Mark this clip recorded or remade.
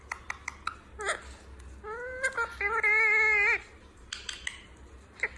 recorded